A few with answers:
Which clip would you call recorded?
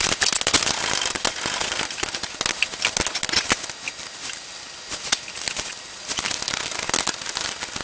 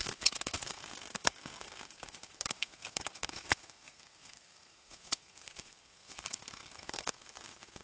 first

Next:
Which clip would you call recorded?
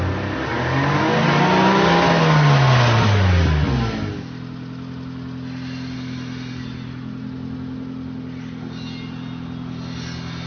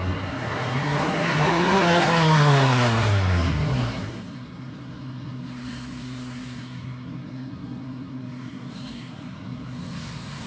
first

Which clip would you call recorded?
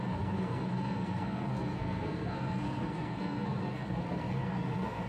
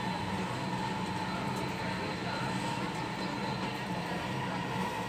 second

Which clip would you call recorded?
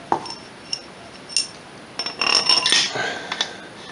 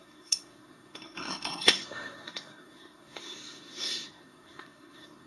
first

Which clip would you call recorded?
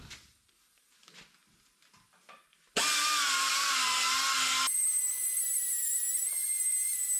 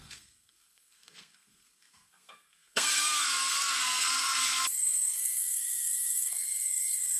first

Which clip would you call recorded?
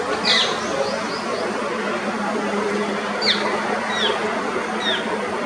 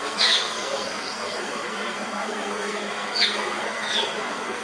first